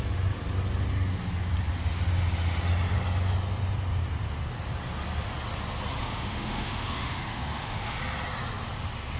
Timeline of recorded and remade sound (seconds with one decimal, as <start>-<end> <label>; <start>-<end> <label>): 0.0-6.0 recorded; 6.0-8.0 remade; 8.0-9.2 recorded